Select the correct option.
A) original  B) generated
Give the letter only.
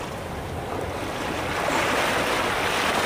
A